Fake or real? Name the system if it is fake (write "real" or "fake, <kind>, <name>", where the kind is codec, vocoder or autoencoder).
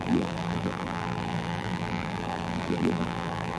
fake, vocoder, BigVGAN v2